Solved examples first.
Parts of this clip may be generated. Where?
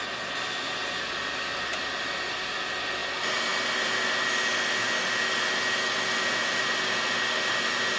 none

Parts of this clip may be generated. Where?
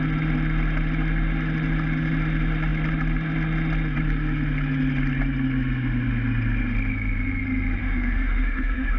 7.8-9.0